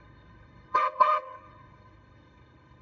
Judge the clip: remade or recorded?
remade